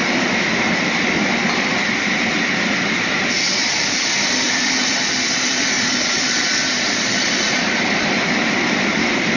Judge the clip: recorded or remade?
remade